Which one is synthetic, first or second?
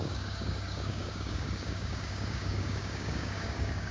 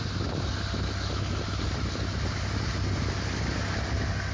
first